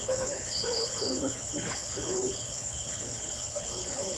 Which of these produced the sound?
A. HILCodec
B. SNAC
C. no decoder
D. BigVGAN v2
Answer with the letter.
A